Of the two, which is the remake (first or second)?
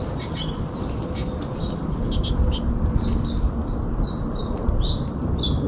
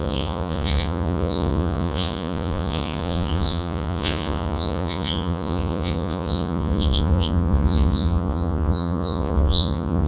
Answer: second